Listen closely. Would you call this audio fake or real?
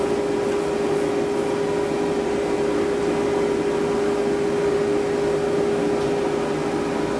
real